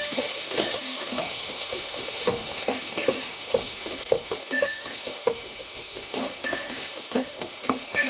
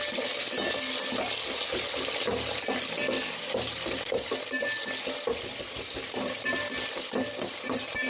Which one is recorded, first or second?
second